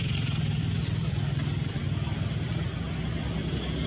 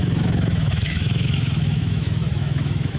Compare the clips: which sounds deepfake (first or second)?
second